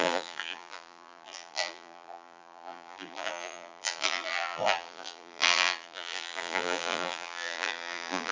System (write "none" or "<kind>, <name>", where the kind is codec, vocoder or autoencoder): vocoder, BigVGAN v2